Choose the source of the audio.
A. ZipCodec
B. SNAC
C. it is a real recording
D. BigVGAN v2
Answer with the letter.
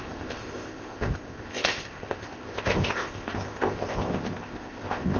A